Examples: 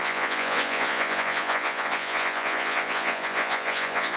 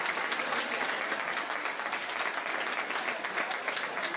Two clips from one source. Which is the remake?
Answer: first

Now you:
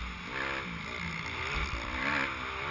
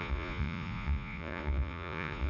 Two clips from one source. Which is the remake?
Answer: second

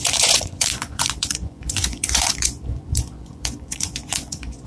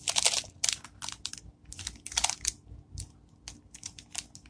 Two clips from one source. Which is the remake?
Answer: first